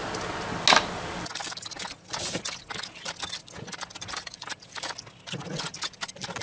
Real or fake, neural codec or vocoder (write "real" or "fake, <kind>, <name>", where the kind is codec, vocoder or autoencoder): real